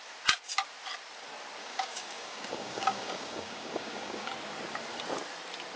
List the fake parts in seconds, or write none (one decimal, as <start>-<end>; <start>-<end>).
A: 1.6-4.3